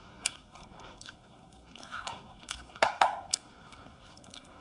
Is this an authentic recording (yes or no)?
no